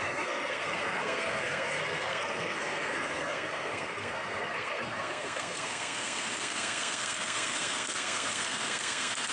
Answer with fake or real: fake